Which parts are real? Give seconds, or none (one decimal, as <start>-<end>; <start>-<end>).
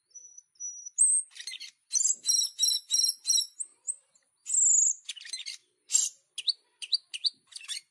0.0-3.7; 4.3-6.8; 7.5-7.9